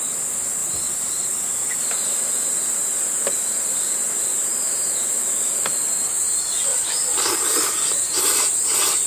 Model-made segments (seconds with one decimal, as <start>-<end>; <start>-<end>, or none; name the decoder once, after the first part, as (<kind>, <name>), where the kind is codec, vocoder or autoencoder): 0.6-1.9 (vocoder, BigVGAN v2); 6.7-7.7